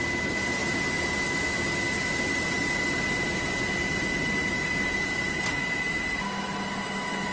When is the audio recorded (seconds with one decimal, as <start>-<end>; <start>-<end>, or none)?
0.0-7.3